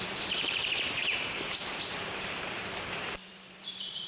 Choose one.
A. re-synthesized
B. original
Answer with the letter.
A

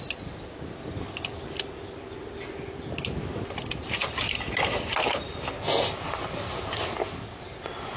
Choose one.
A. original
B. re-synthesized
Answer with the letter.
A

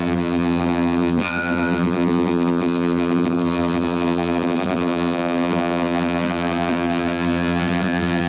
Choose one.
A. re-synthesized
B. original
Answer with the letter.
A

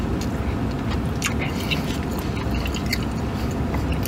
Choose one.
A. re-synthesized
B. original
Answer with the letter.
B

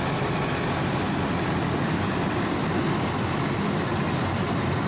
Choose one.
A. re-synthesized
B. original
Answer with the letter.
B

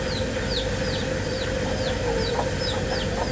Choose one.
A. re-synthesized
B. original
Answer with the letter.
B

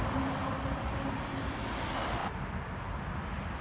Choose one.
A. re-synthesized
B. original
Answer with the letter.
B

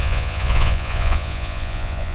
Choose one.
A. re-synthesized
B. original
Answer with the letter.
A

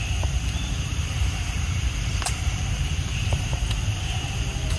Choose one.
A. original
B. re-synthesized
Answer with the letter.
B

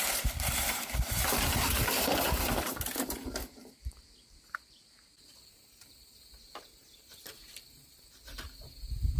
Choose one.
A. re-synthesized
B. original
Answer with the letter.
A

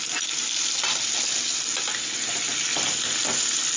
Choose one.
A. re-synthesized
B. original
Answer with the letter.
B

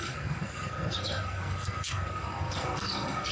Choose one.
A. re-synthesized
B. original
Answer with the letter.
A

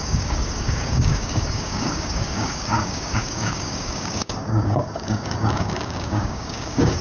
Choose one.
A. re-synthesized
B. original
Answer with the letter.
A